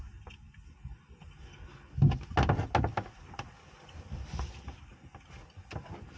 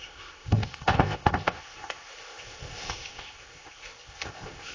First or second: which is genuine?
first